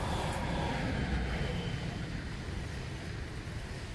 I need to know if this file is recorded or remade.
recorded